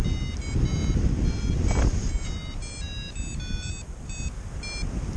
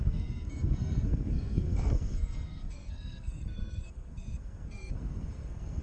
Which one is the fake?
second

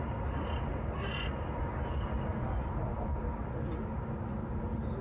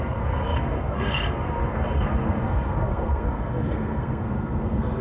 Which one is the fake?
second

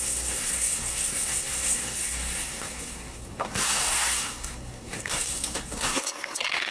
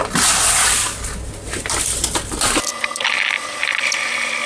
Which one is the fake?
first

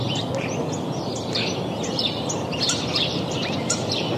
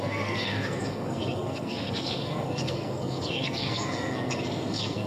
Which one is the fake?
second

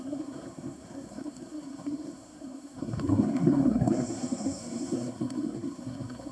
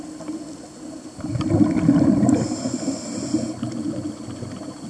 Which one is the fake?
first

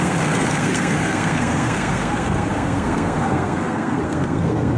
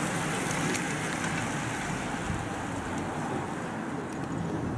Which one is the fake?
first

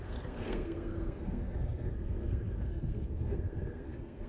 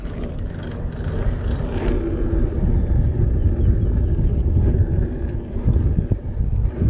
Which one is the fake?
first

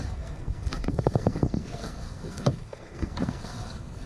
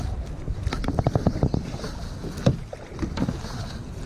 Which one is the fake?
first